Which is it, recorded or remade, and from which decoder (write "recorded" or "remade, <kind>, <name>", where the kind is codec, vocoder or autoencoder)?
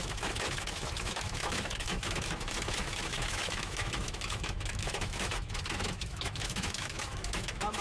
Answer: remade, autoencoder, DAC-VAE